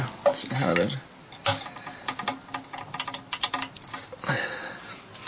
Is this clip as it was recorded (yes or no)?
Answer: yes